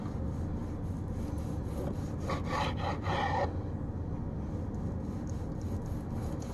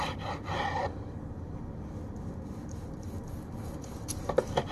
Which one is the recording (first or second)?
first